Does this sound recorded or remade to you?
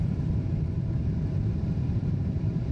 remade